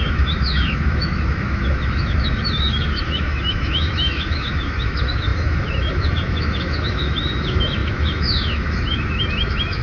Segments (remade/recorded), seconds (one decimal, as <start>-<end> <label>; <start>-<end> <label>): 0.0-9.8 remade